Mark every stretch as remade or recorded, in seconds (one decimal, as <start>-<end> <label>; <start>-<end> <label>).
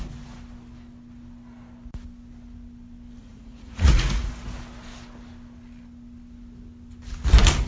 0.0-3.2 recorded; 3.2-4.3 remade; 4.3-7.7 recorded